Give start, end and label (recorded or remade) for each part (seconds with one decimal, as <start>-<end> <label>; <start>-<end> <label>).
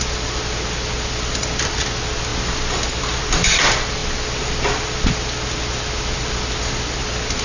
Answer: 0.0-7.4 recorded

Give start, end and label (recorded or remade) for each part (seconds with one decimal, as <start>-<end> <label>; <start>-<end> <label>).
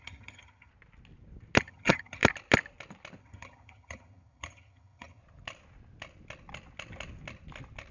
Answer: 0.0-0.7 remade; 0.7-1.6 recorded; 1.6-2.2 remade; 2.2-3.2 recorded; 3.2-5.2 remade; 5.2-7.9 recorded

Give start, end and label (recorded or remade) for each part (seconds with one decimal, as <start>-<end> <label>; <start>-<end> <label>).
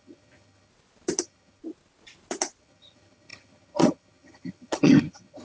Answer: 0.0-0.7 remade; 0.7-1.2 recorded; 1.2-1.6 remade; 1.6-2.6 recorded; 2.6-5.4 remade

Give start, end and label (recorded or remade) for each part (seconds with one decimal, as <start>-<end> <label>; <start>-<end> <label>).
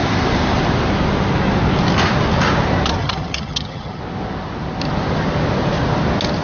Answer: 0.0-3.0 recorded; 3.0-4.0 remade; 4.0-6.4 recorded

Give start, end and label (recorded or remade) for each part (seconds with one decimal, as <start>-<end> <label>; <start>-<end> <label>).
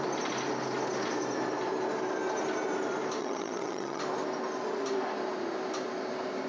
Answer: 0.0-3.2 recorded; 3.2-4.0 remade; 4.0-6.5 recorded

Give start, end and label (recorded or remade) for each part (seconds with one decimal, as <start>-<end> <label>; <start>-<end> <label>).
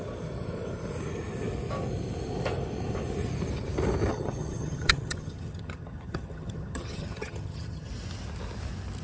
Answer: 0.0-4.1 recorded; 4.1-7.9 remade; 7.9-9.0 recorded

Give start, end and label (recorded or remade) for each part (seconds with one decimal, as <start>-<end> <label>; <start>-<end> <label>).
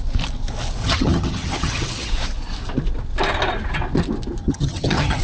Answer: 0.0-0.8 recorded; 0.8-2.1 remade; 2.1-4.4 recorded; 4.4-5.2 remade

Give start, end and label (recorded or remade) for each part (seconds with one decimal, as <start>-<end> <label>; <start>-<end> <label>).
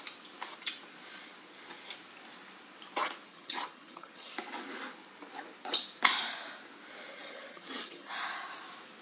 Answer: 0.0-3.3 recorded; 3.3-4.3 remade; 4.3-7.1 recorded; 7.1-8.1 remade; 8.1-9.0 recorded